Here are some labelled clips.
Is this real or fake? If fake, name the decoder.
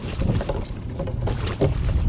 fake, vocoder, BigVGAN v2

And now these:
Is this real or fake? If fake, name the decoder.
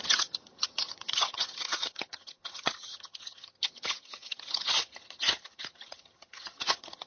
fake, vocoder, HiFi-GAN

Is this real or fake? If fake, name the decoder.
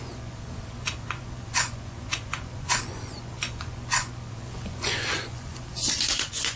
fake, vocoder, Vocos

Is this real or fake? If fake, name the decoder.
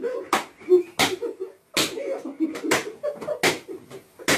real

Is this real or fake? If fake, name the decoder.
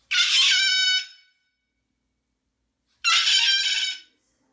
real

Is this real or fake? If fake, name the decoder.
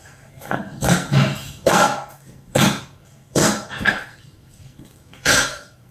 fake, codec, SNAC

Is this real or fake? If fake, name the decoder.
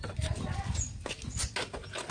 real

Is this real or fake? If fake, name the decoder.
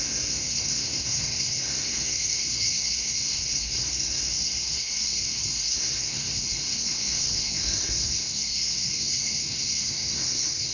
fake, codec, SNAC